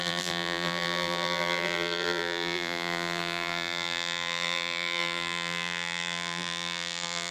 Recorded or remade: remade